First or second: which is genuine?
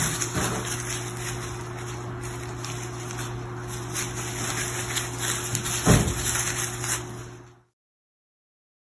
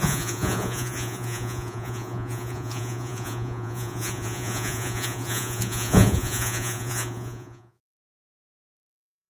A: first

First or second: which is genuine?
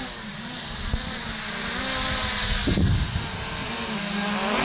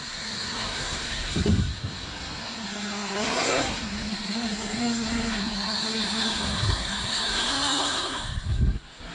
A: first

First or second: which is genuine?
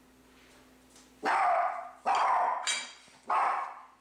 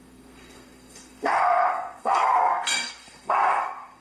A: first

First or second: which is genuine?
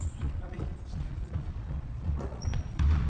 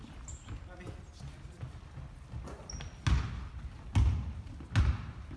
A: second